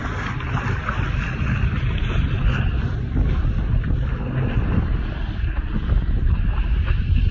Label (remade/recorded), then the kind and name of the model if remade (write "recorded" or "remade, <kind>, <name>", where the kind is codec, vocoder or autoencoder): recorded